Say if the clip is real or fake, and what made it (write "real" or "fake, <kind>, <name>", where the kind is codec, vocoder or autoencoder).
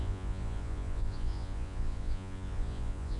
fake, vocoder, Vocos